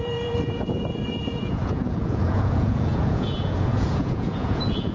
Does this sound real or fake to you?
fake